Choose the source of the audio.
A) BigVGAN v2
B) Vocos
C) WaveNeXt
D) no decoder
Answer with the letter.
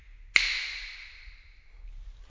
D